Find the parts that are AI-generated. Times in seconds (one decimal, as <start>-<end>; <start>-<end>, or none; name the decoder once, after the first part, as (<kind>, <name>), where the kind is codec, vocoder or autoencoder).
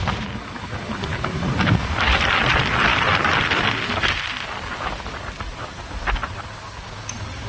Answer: none